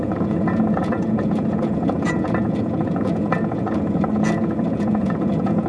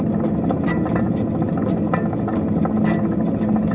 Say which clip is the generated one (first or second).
first